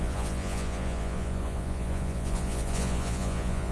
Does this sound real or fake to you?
fake